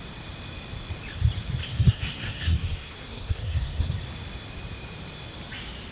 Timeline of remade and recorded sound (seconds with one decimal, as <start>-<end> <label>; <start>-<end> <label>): 0.0-1.7 recorded; 1.7-4.0 remade; 4.0-5.9 recorded